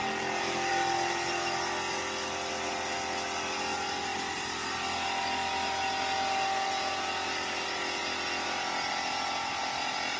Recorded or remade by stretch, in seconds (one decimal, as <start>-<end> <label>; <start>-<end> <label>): 0.0-10.2 recorded